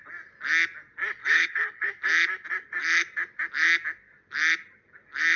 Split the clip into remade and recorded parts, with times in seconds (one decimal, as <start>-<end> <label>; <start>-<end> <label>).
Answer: 0.0-1.2 recorded; 1.2-1.9 remade; 1.9-5.4 recorded